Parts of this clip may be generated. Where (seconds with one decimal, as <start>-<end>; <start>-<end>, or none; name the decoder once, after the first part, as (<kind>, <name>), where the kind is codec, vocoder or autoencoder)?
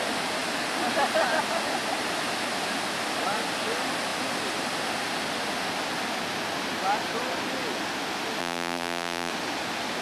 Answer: 8.4-9.3 (vocoder, BigVGAN v2)